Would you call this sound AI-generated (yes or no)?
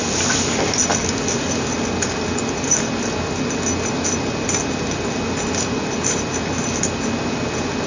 no